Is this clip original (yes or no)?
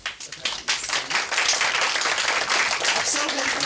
yes